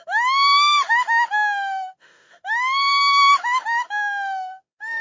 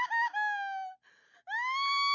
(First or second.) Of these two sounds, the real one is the second